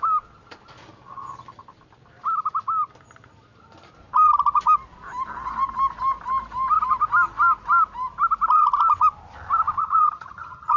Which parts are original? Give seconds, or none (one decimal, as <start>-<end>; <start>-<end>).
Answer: 0.0-9.8